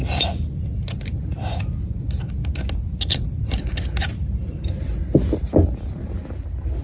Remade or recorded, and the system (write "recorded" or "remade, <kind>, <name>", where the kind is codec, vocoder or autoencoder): recorded